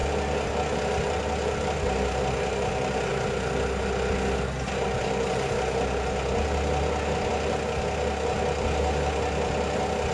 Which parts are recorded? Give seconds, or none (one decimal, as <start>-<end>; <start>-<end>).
0.0-10.1